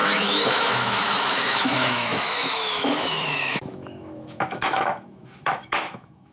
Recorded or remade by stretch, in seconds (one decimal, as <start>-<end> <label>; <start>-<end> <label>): 0.0-6.3 remade